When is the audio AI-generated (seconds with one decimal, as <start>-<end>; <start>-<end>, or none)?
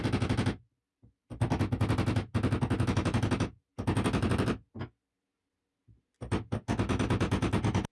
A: none